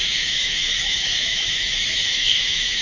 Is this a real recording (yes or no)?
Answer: no